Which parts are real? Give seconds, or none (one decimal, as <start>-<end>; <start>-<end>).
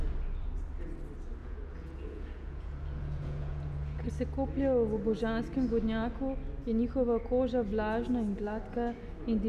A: 0.0-1.4; 4.1-9.5